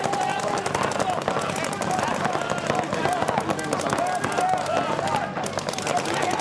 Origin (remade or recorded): recorded